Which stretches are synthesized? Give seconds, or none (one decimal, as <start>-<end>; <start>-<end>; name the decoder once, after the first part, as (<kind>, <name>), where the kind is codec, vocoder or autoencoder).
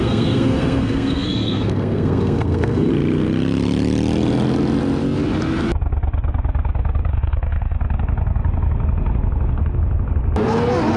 0.0-2.9 (codec, SNAC); 7.1-7.8